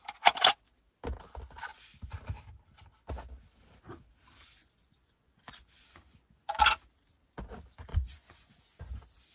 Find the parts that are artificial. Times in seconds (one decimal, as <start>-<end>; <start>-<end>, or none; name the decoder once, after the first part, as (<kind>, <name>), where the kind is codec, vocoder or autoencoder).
4.6-6.6 (vocoder, Vocos); 7.9-8.9